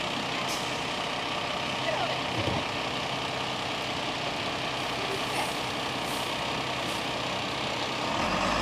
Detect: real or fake real